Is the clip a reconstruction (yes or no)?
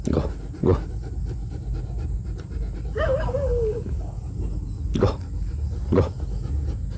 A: no